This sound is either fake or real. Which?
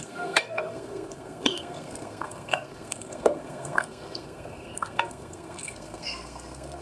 fake